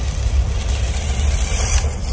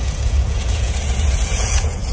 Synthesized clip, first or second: second